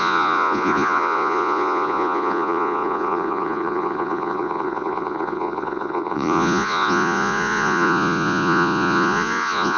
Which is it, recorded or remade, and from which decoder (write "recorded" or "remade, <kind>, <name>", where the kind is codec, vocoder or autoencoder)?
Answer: remade, vocoder, Vocos